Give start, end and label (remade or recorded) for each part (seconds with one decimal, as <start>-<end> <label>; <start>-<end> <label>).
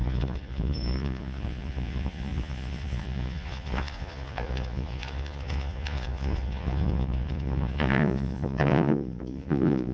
0.0-9.9 remade